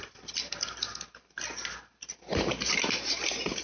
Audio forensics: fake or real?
fake